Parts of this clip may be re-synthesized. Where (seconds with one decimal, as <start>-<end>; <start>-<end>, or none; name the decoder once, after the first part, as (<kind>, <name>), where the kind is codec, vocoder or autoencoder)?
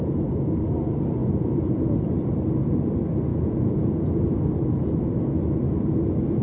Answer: 1.2-1.9 (vocoder, Vocos); 3.3-4.2